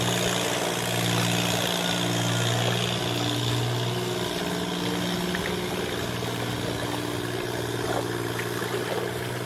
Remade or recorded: recorded